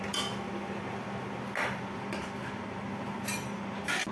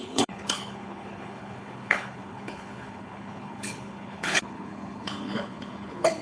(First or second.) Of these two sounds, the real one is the first